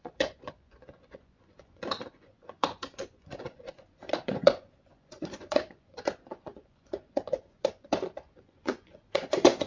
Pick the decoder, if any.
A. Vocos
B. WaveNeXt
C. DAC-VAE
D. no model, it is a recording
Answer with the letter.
A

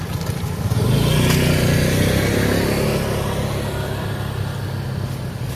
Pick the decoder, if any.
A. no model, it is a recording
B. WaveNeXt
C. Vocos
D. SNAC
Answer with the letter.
A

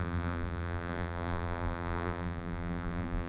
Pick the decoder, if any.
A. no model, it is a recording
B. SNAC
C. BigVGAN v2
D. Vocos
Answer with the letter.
C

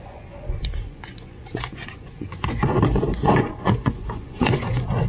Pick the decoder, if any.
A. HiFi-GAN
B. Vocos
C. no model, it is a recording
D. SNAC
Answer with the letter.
B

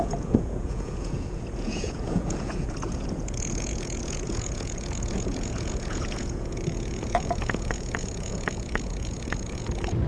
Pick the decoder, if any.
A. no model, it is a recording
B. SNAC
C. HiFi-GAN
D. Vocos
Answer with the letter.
D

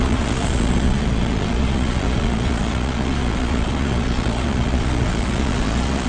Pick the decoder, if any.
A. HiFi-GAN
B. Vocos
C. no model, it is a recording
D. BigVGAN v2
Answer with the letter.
B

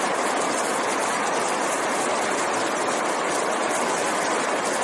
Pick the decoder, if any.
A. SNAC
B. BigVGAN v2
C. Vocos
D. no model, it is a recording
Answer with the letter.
D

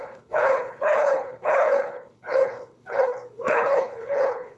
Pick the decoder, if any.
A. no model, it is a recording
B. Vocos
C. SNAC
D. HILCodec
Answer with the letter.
D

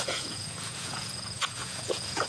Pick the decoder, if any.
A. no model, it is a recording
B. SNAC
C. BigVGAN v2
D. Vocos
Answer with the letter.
D